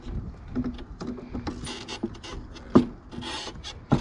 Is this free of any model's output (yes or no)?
yes